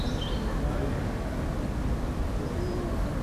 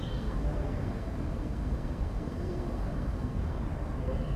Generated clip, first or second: second